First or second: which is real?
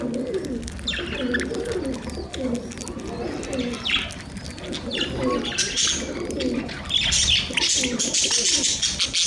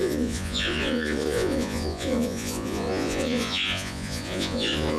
first